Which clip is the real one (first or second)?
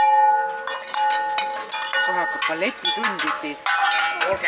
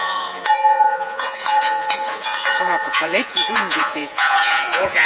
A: first